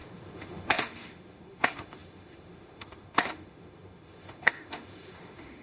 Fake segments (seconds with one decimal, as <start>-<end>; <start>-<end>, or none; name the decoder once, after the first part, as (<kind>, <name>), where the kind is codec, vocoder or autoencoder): 0.0-5.6 (autoencoder, DAC-VAE)